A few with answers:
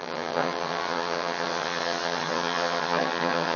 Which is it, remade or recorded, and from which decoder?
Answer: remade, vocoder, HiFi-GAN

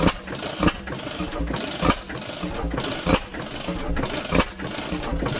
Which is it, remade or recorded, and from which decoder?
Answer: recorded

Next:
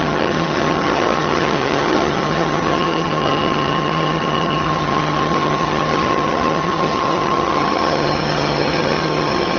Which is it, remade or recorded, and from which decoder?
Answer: remade, vocoder, HiFi-GAN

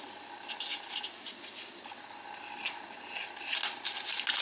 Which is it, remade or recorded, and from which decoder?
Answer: recorded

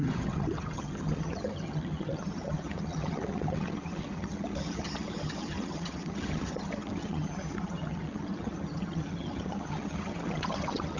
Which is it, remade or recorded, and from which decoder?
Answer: remade, vocoder, HiFi-GAN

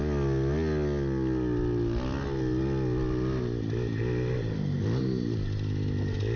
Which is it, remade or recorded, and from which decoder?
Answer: recorded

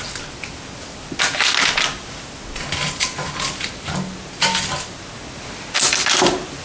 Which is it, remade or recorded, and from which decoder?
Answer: recorded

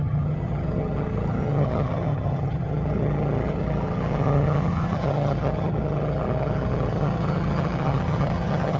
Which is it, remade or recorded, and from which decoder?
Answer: remade, vocoder, HiFi-GAN